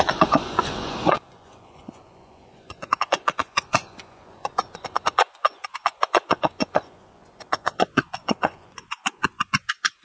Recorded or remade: remade